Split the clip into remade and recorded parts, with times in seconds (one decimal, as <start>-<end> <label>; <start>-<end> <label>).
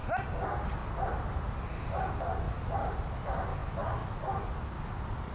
0.0-5.3 recorded